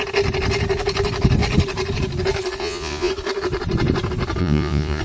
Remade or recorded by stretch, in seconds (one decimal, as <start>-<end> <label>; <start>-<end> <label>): 0.0-2.6 recorded; 2.6-3.1 remade; 3.1-4.4 recorded; 4.4-5.0 remade